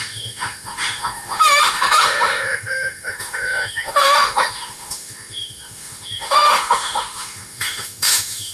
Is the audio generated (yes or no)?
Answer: yes